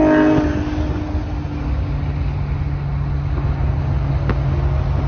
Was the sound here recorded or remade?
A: recorded